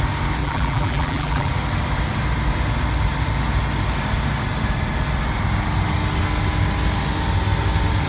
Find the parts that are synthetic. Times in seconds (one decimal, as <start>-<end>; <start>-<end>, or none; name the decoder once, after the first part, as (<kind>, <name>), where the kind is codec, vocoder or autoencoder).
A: 0.4-1.5 (vocoder, BigVGAN v2)